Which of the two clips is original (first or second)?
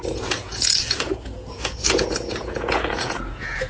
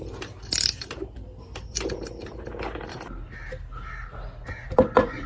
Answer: second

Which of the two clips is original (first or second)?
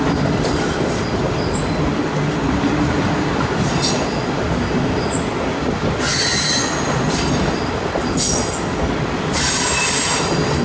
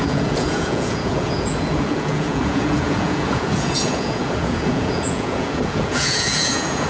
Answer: first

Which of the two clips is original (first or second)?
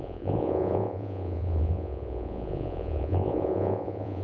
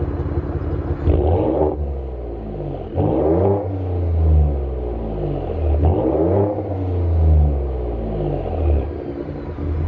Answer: second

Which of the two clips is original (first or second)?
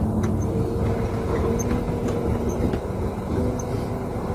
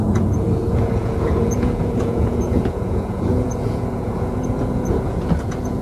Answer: first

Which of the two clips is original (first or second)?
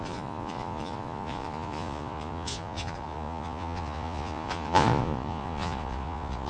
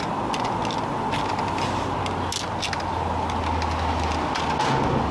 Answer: second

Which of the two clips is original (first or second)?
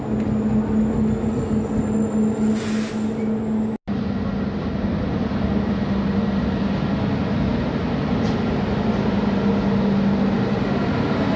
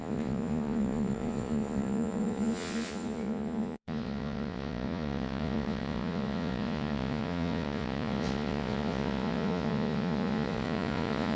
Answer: first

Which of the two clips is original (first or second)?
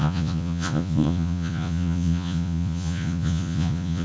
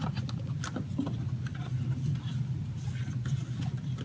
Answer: second